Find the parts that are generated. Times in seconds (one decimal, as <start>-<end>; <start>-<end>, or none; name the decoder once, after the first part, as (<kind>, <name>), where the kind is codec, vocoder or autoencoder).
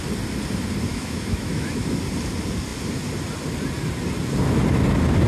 0.9-2.0 (autoencoder, DAC-VAE)